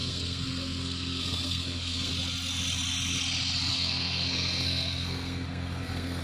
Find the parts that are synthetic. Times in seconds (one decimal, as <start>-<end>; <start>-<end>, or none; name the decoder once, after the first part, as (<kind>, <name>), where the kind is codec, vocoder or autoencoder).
0.0-2.1 (codec, SNAC); 3.7-6.2